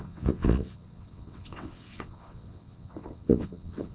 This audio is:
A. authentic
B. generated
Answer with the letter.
B